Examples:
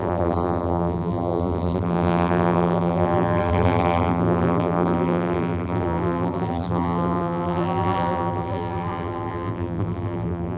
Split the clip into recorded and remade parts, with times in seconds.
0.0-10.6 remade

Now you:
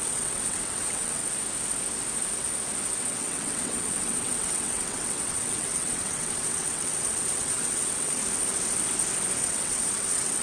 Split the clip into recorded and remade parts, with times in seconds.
0.0-1.2 remade; 1.2-3.1 recorded; 3.1-8.2 remade; 8.2-9.4 recorded; 9.4-10.4 remade